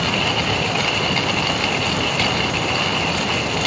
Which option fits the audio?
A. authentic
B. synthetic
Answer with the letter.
A